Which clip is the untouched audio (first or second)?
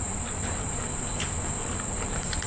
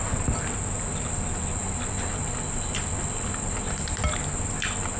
second